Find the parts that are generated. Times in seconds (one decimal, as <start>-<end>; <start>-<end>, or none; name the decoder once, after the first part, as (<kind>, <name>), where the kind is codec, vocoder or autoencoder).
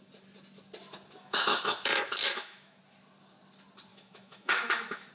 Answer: 1.2-2.8 (autoencoder, DAC-VAE); 3.9-5.1